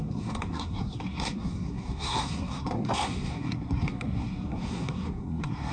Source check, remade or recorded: remade